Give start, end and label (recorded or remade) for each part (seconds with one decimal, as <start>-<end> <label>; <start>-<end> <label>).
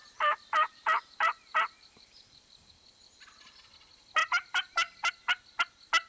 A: 0.0-2.7 remade; 2.7-4.2 recorded; 4.2-5.1 remade; 5.1-6.1 recorded